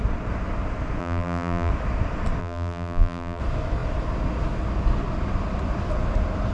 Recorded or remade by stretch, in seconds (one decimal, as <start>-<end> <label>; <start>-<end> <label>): 0.0-1.0 recorded; 1.0-1.7 remade; 1.7-2.4 recorded; 2.4-3.4 remade; 3.4-6.5 recorded